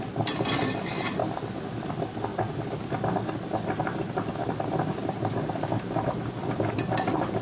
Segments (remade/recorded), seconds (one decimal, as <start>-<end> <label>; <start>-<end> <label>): 0.0-7.4 recorded